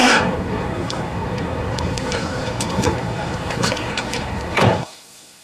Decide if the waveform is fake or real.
fake